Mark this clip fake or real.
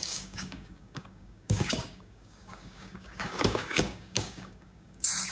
fake